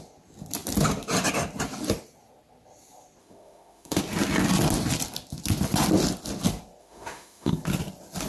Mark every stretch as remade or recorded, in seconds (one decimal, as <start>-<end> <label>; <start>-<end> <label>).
0.0-3.2 recorded; 3.2-4.0 remade; 4.0-6.8 recorded; 6.8-7.5 remade; 7.5-8.3 recorded